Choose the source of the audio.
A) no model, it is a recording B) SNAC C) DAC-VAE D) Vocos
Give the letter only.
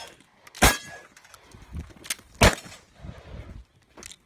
A